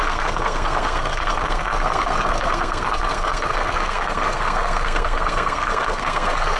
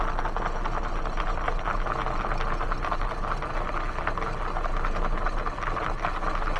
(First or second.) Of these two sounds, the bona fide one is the second